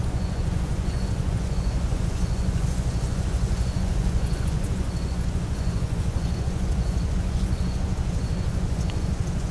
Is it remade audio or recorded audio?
remade